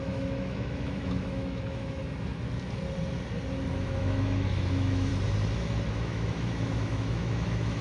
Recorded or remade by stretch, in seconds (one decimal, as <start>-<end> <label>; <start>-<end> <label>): 0.0-2.0 remade; 2.0-3.7 recorded; 3.7-5.1 remade; 5.1-5.9 recorded; 5.9-7.8 remade